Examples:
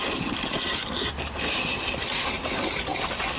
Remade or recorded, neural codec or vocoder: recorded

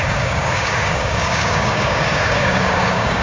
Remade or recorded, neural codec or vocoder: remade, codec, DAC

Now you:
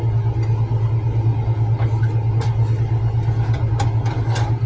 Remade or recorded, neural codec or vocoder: recorded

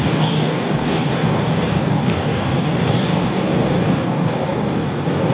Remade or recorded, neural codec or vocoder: remade, codec, DAC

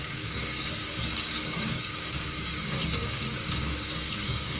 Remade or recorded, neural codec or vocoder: remade, codec, DAC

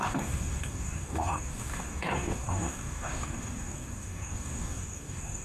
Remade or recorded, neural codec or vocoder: remade, codec, DAC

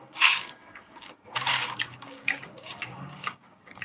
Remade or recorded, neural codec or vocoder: remade, codec, DAC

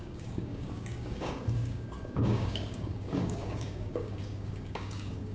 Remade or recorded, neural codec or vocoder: remade, codec, DAC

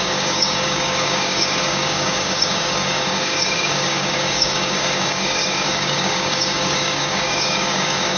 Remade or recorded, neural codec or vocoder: remade, codec, DAC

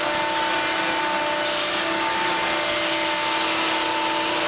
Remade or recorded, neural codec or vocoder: recorded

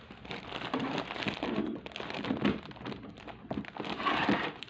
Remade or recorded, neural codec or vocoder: recorded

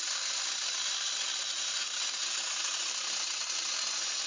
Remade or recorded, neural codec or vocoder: recorded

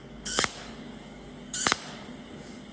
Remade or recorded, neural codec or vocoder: remade, codec, DAC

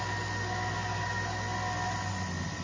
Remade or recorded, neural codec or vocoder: recorded